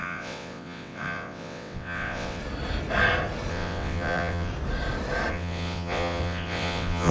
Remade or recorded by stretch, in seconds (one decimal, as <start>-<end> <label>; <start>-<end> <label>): 0.0-2.4 remade; 2.4-3.5 recorded; 3.5-4.5 remade; 4.5-5.3 recorded; 5.3-7.1 remade